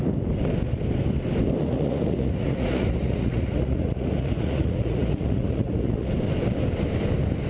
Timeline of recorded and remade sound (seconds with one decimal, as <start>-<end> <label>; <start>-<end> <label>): 0.0-1.6 recorded; 1.6-6.1 remade; 6.1-7.5 recorded